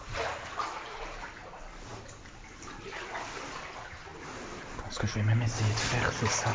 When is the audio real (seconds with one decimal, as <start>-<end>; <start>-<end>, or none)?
0.0-6.5